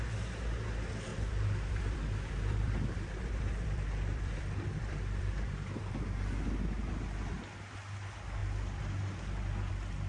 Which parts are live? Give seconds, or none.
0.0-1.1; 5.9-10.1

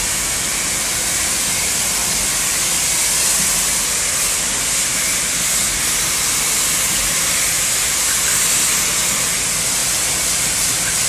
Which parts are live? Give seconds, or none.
0.0-4.9; 6.6-9.8

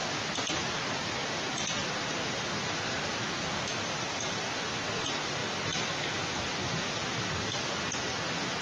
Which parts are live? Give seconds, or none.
0.0-3.7; 4.5-8.6

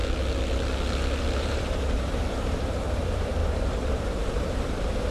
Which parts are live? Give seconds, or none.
0.0-1.4

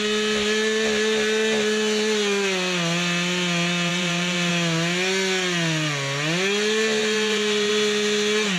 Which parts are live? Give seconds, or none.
0.0-3.9; 4.5-7.0; 7.7-8.6

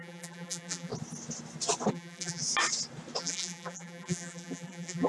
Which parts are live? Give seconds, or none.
0.9-1.9; 2.4-3.2

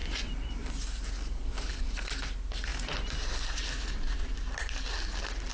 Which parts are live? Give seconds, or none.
1.7-5.5